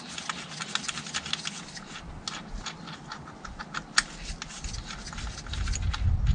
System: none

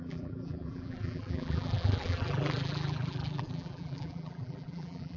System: vocoder, BigVGAN v2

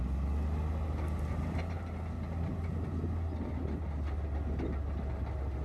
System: none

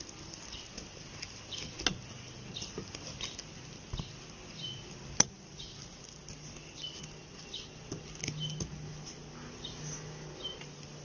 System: none